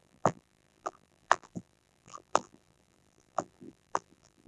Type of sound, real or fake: fake